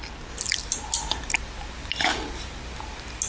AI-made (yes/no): no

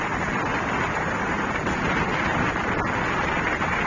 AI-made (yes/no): no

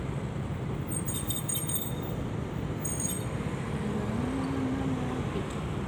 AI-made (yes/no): no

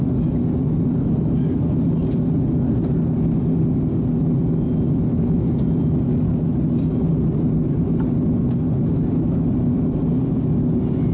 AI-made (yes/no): no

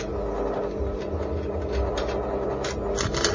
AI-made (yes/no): no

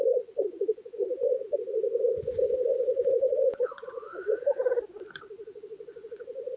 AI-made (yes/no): yes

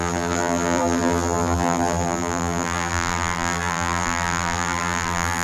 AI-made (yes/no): yes